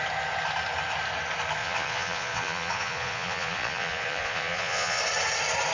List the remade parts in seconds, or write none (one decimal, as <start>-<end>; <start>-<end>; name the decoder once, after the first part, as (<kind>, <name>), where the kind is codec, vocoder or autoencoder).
1.6-5.0 (vocoder, Vocos)